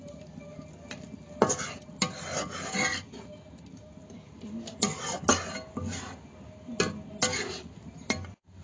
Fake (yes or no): no